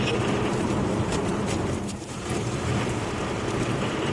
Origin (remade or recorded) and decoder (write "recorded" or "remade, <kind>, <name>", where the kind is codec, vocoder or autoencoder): remade, vocoder, BigVGAN v2